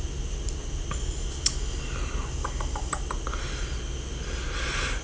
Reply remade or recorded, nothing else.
recorded